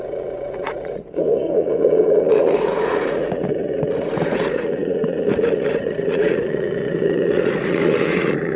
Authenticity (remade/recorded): remade